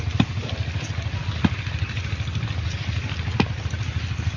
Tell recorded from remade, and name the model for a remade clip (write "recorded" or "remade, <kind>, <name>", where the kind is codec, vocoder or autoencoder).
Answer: recorded